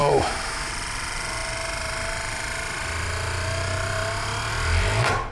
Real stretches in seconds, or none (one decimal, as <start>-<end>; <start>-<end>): 0.7-5.3